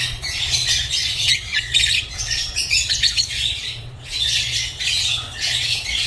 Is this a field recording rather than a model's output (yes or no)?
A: no